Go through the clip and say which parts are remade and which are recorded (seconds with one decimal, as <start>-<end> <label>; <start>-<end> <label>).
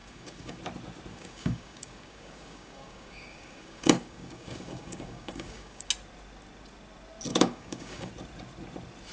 0.0-0.6 remade; 0.6-1.1 recorded; 1.1-5.9 remade; 5.9-7.3 recorded; 7.3-8.1 remade; 8.1-9.1 recorded